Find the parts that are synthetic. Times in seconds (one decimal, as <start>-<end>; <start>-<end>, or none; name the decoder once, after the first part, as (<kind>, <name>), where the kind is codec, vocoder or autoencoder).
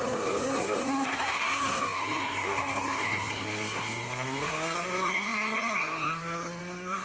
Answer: 0.0-7.0 (codec, SNAC)